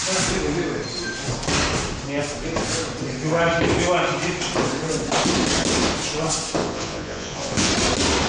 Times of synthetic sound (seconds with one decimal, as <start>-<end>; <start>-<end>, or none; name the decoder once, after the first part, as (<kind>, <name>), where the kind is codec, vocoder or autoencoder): 6.6-7.7 (vocoder, Vocos)